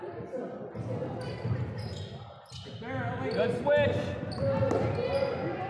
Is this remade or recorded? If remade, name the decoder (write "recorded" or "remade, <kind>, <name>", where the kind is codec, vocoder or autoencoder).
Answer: recorded